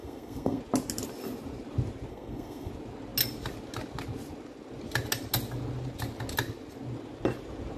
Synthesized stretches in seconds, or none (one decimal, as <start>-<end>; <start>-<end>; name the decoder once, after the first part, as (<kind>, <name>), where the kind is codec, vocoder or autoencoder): 0.0-0.6 (codec, SNAC); 2.1-2.7